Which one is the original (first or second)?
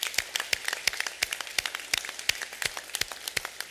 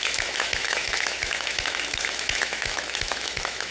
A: first